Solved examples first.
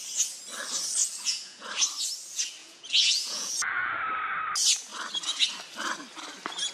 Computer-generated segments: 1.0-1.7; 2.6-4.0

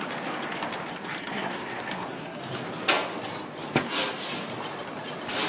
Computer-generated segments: 1.2-2.4

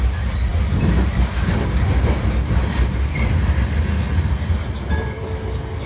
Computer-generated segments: 4.6-5.2